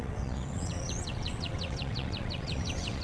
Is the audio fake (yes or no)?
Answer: yes